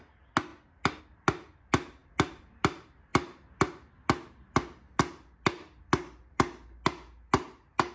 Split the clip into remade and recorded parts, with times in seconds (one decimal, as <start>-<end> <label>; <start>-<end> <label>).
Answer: 0.0-7.9 recorded